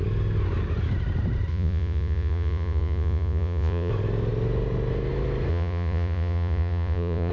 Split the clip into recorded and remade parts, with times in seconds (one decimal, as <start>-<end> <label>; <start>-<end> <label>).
0.0-1.5 recorded; 1.5-3.9 remade; 3.9-5.5 recorded; 5.5-7.3 remade

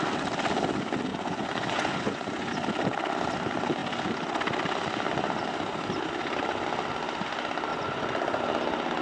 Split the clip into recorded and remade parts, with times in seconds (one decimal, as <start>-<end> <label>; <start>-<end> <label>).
0.0-1.1 recorded; 1.1-2.5 remade; 2.5-7.7 recorded; 7.7-8.4 remade; 8.4-9.0 recorded

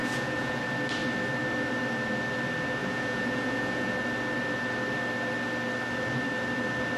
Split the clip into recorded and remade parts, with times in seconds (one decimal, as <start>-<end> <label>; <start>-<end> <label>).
0.0-0.6 remade; 0.6-2.8 recorded; 2.8-3.9 remade; 3.9-7.0 recorded

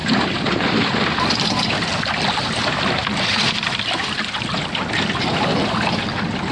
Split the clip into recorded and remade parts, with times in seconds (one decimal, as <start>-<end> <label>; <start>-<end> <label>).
0.0-6.5 recorded